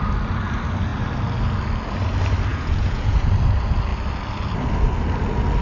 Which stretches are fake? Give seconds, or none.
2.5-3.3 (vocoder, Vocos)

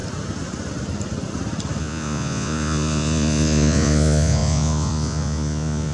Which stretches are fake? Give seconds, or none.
1.8-5.9 (vocoder, Vocos)

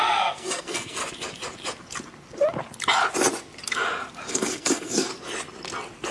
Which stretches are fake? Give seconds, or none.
0.0-1.0 (codec, SNAC); 4.3-5.1

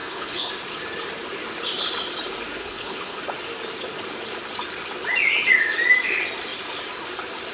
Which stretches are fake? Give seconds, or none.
0.0-0.5 (codec, HILCodec); 2.6-3.2

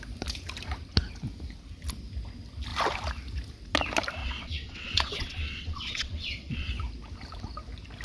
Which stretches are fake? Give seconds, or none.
4.2-6.7 (vocoder, WaveNeXt)